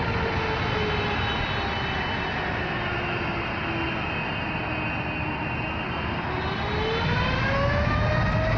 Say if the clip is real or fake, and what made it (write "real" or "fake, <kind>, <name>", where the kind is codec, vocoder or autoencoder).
real